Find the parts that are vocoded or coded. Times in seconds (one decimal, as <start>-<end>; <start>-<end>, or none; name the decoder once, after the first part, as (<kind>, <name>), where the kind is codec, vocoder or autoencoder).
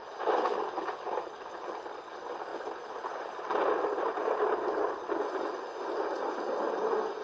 none